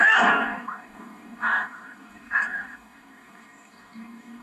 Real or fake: fake